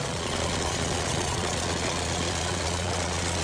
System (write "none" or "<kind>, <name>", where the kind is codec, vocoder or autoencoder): vocoder, Vocos